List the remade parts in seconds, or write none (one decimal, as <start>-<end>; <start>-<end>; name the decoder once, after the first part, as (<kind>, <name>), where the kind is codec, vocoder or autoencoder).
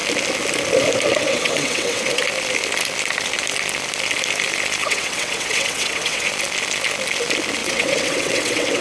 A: 1.1-2.2 (vocoder, WaveNeXt); 4.8-6.3; 7.6-8.8